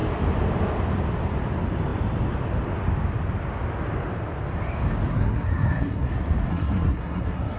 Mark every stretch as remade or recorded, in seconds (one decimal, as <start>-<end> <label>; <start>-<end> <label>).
0.0-5.1 recorded; 5.1-6.1 remade; 6.1-6.5 recorded; 6.5-7.6 remade

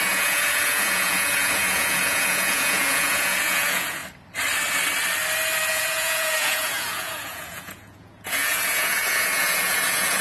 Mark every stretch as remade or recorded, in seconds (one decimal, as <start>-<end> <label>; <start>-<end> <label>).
0.0-4.0 remade; 4.0-5.7 recorded; 5.7-10.2 remade

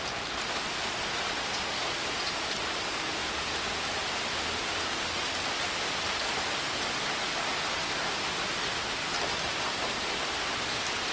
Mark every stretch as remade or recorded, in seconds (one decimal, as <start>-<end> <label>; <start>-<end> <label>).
0.0-3.2 recorded; 3.2-4.0 remade; 4.0-11.1 recorded

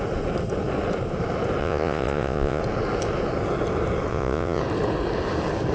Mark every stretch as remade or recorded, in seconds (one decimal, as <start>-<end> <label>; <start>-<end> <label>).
0.0-1.6 recorded; 1.6-2.6 remade; 2.6-4.1 recorded; 4.1-4.6 remade; 4.6-5.7 recorded

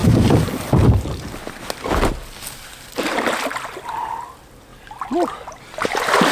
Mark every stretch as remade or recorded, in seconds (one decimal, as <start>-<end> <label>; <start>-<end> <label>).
0.0-6.3 recorded